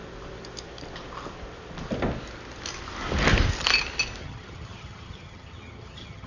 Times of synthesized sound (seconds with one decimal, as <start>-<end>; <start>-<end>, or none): 4.2-6.3